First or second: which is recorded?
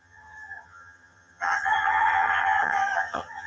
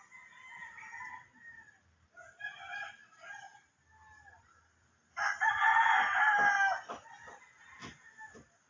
second